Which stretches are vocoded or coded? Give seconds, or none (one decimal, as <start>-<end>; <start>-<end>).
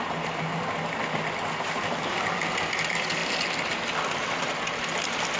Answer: none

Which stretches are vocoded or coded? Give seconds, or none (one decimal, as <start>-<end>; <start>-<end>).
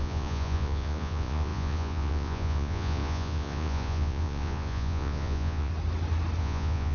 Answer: 0.0-5.7; 6.4-6.9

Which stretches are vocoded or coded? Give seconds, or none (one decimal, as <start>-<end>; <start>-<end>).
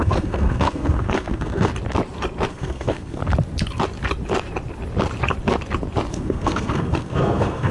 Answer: 0.0-1.7; 2.5-3.2; 6.1-7.7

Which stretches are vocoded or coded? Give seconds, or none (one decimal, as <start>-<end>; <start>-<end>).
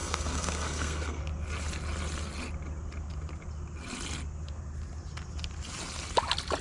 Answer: 0.0-1.2